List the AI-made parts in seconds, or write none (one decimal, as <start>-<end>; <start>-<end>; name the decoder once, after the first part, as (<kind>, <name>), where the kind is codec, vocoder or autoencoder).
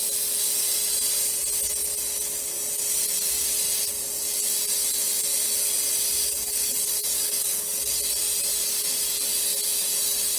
6.2-7.6 (codec, DAC)